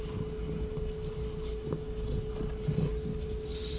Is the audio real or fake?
real